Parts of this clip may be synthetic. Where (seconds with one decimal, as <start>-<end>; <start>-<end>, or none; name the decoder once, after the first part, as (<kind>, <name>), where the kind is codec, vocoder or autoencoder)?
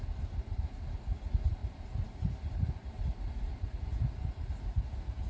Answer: 1.6-4.8 (vocoder, BigVGAN v2)